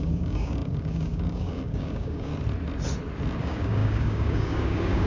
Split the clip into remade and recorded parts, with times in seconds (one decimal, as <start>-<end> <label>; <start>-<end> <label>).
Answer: 0.0-2.3 remade; 2.3-3.4 recorded; 3.4-5.1 remade